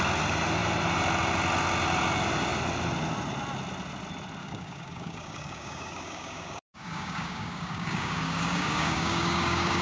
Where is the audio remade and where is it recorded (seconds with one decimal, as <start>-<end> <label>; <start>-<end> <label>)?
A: 0.0-4.4 recorded; 4.4-9.8 remade